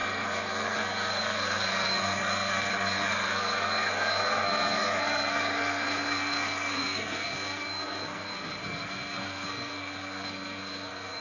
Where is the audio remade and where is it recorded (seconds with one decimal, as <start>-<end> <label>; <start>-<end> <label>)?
0.0-11.2 remade